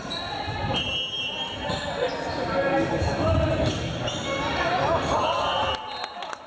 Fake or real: real